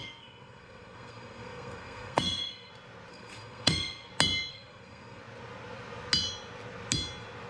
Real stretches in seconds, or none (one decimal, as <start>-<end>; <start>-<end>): 2.7-3.1; 4.1-4.5; 5.2-7.5